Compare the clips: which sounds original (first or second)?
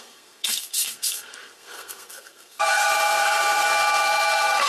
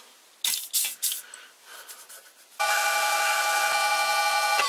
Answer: second